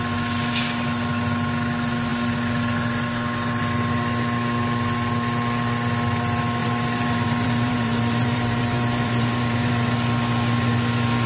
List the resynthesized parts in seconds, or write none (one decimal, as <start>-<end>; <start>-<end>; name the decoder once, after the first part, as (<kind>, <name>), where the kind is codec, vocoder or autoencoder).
6.6-9.7 (vocoder, BigVGAN v2)